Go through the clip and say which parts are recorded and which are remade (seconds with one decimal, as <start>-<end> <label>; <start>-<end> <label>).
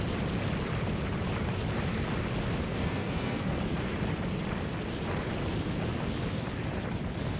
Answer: 0.0-2.7 recorded; 2.7-3.6 remade; 3.6-7.4 recorded